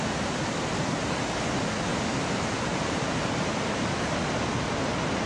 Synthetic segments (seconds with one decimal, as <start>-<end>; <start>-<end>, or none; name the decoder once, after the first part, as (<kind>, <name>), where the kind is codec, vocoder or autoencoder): 1.9-5.3 (vocoder, BigVGAN v2)